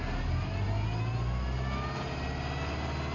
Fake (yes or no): no